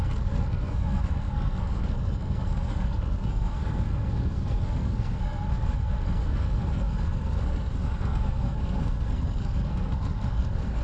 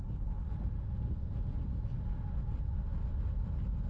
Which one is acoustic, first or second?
second